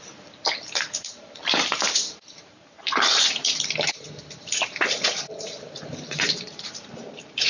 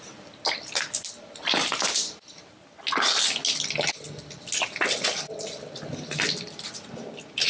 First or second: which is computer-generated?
first